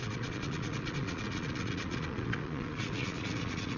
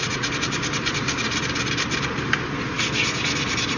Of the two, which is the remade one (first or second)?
first